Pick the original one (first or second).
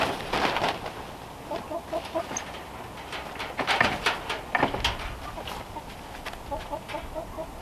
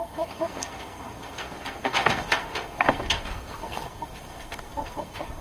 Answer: first